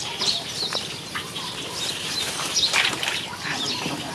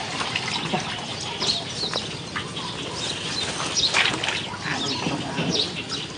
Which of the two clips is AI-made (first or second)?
first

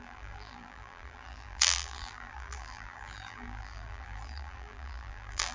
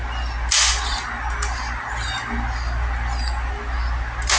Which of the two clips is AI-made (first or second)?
first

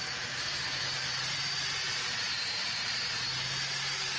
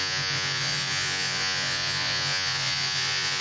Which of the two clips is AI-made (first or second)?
second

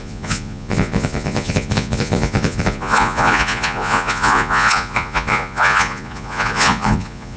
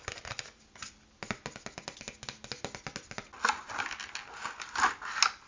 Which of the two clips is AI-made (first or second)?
first